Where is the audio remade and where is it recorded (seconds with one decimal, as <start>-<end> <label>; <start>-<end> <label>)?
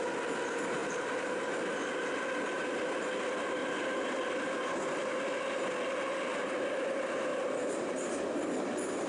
0.0-0.8 recorded; 0.8-1.5 remade; 1.5-7.3 recorded; 7.3-8.2 remade; 8.2-9.1 recorded